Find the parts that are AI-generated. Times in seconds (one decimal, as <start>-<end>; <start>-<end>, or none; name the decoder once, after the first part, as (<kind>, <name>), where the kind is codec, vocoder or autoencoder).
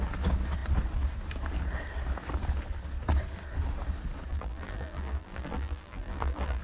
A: 4.3-6.6 (vocoder, BigVGAN v2)